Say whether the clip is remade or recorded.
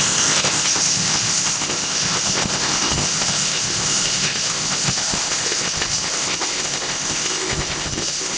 remade